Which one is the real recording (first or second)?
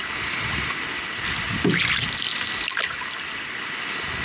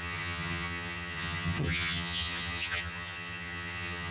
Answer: first